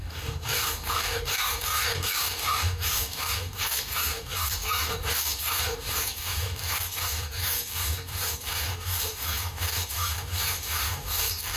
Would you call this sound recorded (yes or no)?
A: no